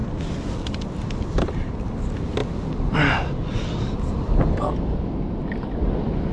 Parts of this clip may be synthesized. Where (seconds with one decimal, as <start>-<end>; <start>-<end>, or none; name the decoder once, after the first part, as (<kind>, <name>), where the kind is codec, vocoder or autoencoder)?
none